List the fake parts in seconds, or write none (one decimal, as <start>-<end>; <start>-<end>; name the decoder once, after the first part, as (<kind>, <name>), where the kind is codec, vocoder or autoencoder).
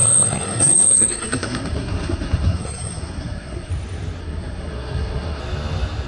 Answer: 0.0-3.7 (codec, SNAC); 4.2-5.4